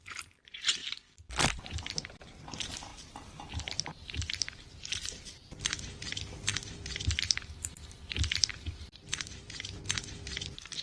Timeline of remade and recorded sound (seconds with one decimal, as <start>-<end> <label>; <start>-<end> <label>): 0.0-0.8 remade; 0.8-1.5 recorded; 1.5-2.9 remade; 2.9-3.5 recorded; 3.5-10.8 remade